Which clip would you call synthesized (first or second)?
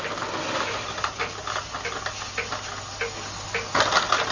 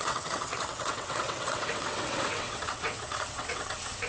second